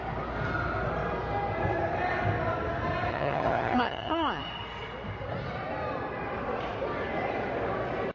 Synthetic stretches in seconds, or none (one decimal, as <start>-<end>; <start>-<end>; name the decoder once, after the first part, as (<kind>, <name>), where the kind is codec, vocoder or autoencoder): 3.1-4.4 (vocoder, HiFi-GAN)